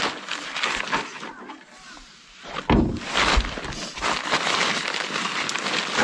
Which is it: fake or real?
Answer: real